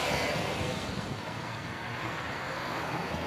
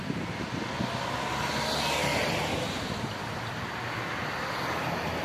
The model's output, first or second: first